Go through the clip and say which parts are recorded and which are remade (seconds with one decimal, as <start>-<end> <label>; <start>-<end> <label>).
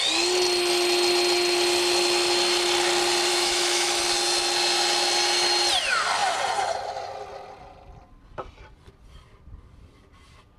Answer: 0.0-3.3 recorded; 3.3-4.0 remade; 4.0-10.6 recorded